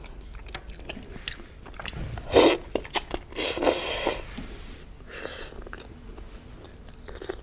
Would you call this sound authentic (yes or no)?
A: yes